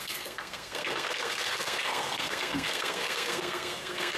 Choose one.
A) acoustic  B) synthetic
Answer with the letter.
B